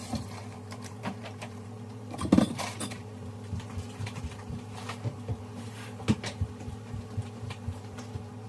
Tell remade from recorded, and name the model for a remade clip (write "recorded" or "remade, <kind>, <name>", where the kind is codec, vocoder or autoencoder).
remade, vocoder, BigVGAN v2